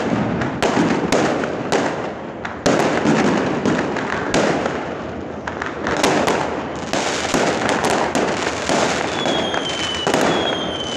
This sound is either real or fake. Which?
real